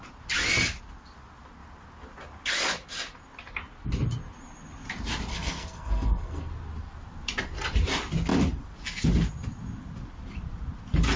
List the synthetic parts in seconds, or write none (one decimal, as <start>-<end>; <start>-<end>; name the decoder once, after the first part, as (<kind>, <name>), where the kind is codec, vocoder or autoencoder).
5.3-6.5 (codec, SNAC)